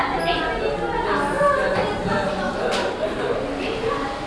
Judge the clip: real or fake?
real